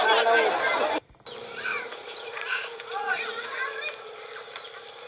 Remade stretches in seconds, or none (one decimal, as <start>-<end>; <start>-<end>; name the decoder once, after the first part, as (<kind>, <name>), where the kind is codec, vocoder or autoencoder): 1.7-3.6 (vocoder, Vocos)